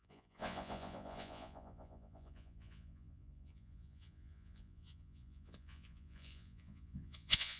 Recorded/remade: remade